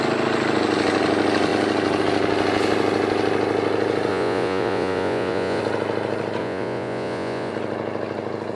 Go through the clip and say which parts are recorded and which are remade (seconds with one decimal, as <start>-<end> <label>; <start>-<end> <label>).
0.0-4.1 recorded; 4.1-5.6 remade; 5.6-6.4 recorded; 6.4-7.5 remade; 7.5-8.6 recorded